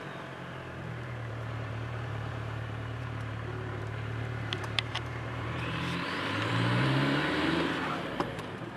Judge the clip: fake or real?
fake